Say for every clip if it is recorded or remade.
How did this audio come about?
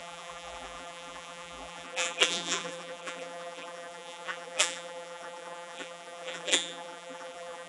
remade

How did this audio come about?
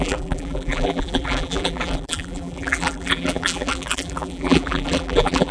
remade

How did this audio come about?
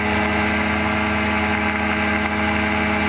recorded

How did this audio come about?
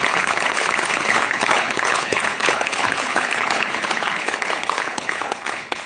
remade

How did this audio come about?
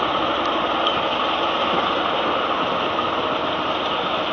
recorded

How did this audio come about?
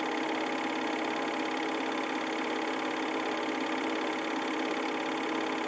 recorded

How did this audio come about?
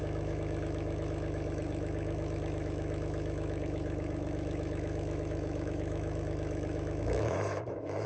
remade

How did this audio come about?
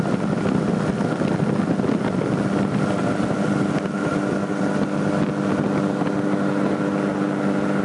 recorded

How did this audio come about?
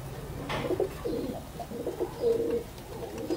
recorded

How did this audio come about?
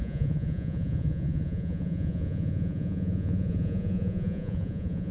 remade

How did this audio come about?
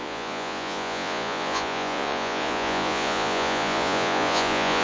remade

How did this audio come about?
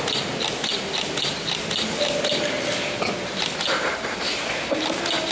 recorded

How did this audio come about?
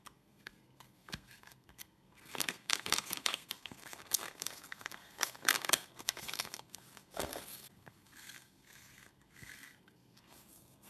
remade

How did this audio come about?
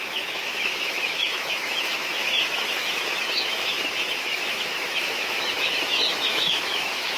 remade